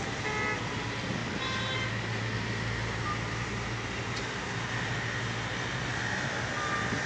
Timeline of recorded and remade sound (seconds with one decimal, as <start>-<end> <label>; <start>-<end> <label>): 0.0-7.1 recorded